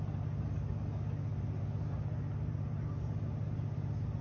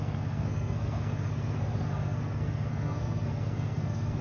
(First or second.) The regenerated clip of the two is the second